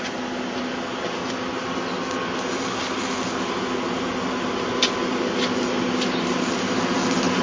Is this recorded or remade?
recorded